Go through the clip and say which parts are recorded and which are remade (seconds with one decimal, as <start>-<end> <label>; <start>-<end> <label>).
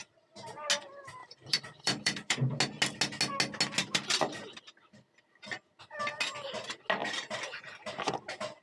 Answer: 0.0-1.2 recorded; 1.2-2.6 remade; 2.6-3.8 recorded; 3.8-5.7 remade; 5.7-8.6 recorded